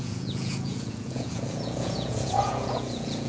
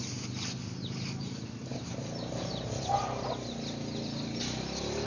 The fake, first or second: first